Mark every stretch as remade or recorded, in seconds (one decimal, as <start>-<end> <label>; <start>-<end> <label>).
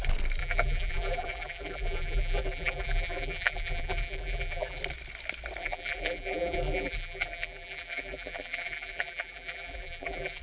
0.0-0.4 recorded; 0.4-4.8 remade; 4.8-5.6 recorded; 5.6-10.4 remade